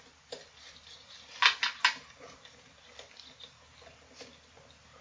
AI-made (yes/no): no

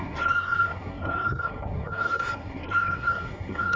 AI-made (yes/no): yes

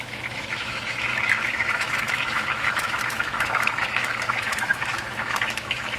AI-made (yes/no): yes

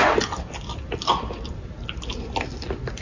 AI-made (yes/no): no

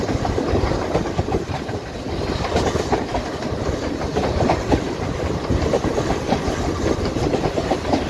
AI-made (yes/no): no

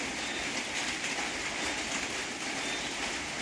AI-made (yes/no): no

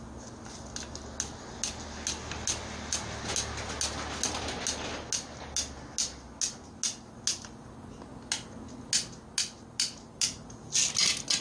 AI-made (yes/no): no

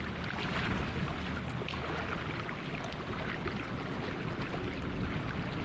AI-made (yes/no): no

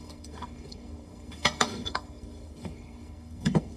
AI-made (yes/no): yes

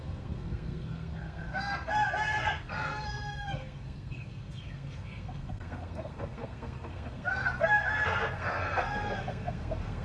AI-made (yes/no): yes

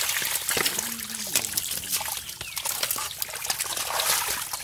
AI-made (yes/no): no